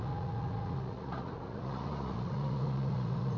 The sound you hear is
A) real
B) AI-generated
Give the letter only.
B